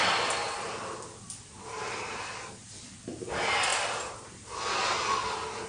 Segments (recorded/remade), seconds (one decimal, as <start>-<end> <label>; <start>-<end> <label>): 0.0-5.7 recorded